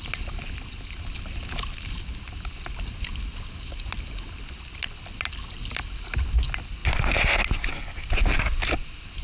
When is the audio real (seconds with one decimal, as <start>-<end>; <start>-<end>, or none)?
0.0-9.2